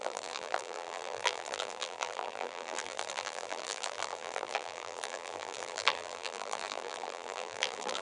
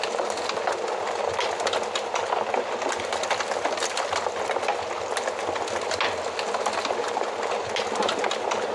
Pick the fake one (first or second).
first